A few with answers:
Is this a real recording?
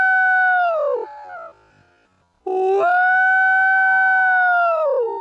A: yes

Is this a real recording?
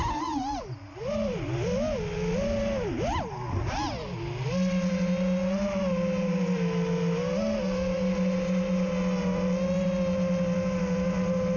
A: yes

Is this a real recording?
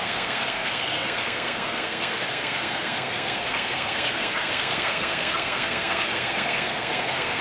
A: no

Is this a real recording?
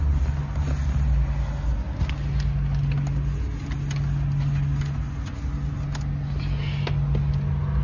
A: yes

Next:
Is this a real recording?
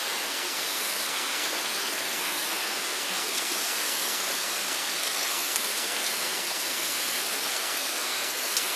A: no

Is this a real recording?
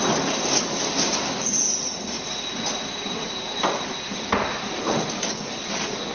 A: yes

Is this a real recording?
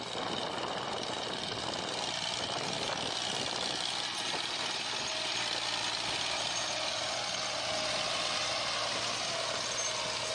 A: yes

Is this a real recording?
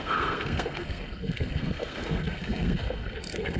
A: no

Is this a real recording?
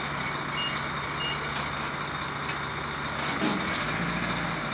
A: yes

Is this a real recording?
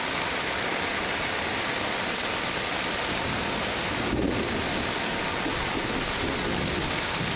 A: yes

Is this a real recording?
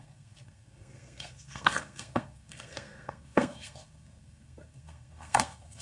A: no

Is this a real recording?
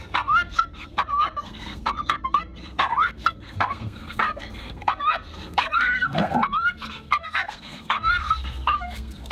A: no